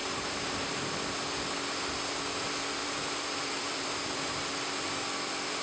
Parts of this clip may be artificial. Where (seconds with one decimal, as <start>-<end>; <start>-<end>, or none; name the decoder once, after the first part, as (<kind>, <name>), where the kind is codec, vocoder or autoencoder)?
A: 0.0-0.9 (vocoder, BigVGAN v2); 2.8-4.5